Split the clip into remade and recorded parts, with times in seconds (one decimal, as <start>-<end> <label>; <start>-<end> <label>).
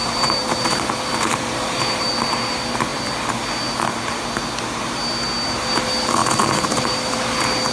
0.0-2.1 remade; 2.1-6.2 recorded; 6.2-7.2 remade; 7.2-7.7 recorded